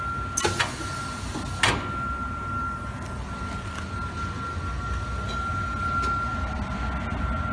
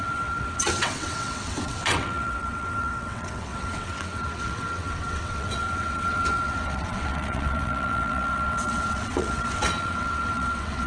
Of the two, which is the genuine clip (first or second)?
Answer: first